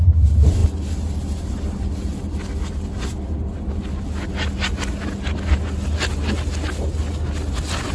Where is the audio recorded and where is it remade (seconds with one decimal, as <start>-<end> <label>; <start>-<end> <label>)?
0.0-7.9 recorded